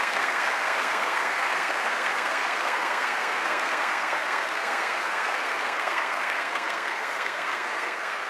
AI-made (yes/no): yes